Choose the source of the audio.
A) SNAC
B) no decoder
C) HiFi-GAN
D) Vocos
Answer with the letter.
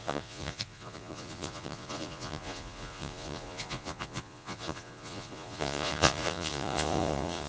D